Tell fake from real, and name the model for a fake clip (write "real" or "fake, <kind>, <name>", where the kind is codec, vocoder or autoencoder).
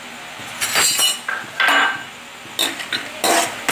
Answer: real